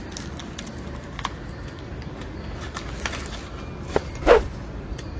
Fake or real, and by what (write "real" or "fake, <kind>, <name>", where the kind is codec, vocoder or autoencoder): real